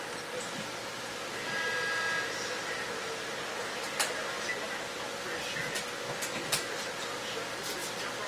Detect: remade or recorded recorded